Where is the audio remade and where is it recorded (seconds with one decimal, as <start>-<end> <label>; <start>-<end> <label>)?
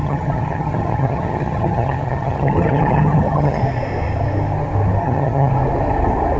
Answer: 0.0-3.6 remade; 3.6-5.0 recorded; 5.0-5.5 remade; 5.5-6.4 recorded